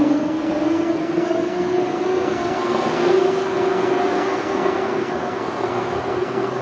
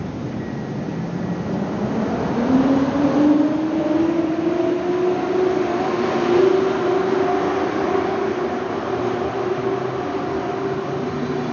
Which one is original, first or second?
second